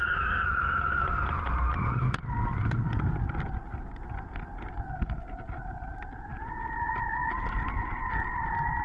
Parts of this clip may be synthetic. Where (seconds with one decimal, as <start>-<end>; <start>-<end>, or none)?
none